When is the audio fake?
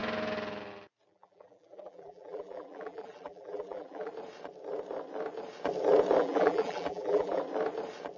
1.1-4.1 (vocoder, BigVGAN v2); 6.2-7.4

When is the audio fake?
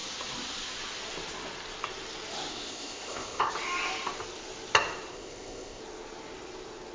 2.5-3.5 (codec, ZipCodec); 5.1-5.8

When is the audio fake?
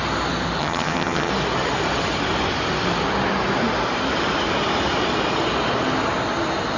0.6-1.3 (vocoder, HiFi-GAN)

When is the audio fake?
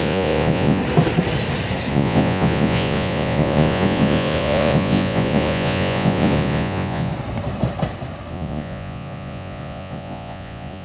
0.0-0.8 (vocoder, Vocos); 1.9-7.1; 8.3-10.8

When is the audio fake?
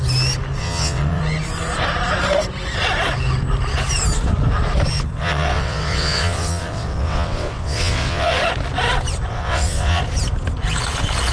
0.6-1.2 (vocoder, WaveNeXt); 5.2-8.4; 9.3-10.0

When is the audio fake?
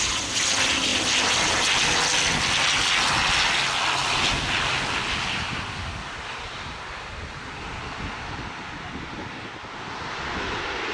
none